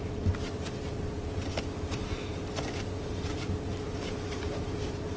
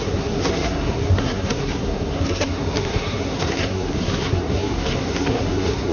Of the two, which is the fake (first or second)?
second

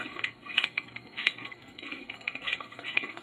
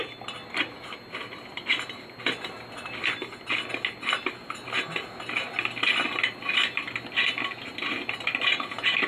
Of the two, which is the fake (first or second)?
first